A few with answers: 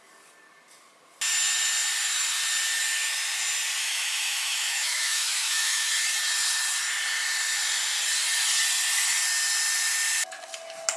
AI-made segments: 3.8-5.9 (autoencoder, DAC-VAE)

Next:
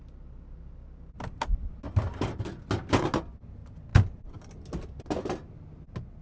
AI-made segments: none

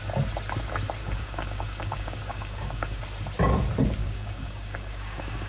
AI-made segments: 1.0-3.0 (codec, DAC); 4.0-5.5

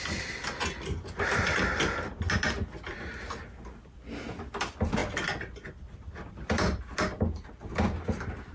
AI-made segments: none

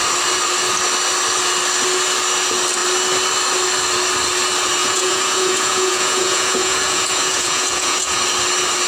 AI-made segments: 4.8-8.2 (vocoder, Vocos)